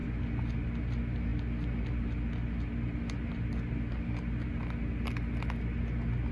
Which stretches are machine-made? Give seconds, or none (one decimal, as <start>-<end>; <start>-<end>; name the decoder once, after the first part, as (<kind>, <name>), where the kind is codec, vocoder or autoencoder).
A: none